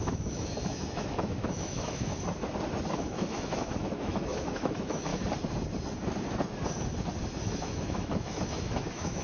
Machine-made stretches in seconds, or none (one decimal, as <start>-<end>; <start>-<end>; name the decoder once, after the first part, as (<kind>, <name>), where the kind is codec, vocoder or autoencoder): 0.0-2.1 (autoencoder, DAC-VAE); 2.9-5.1; 7.4-9.2